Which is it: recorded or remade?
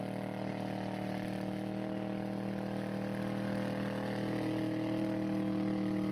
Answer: recorded